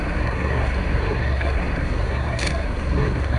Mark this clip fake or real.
fake